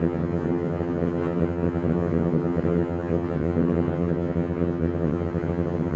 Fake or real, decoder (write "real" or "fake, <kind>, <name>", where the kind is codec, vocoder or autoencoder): fake, vocoder, HiFi-GAN